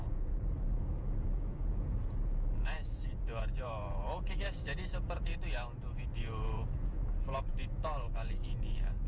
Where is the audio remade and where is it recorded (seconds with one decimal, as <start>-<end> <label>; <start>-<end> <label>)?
0.0-9.1 remade